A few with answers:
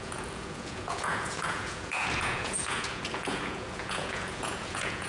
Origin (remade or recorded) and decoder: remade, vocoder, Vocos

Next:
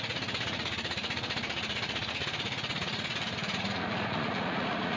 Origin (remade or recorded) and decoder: remade, vocoder, Vocos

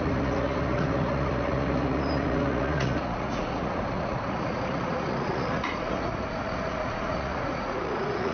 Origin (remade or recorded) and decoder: remade, vocoder, Vocos